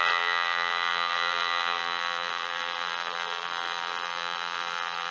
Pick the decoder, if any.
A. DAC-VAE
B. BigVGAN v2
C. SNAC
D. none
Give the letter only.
B